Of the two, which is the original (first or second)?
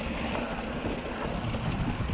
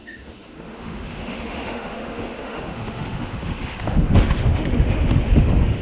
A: first